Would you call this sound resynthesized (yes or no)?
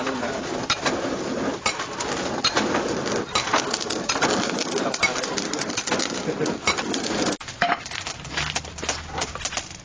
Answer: no